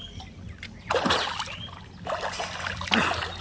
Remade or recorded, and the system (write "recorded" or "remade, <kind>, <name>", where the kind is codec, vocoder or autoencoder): recorded